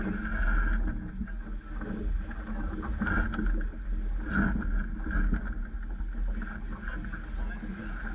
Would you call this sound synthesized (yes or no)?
no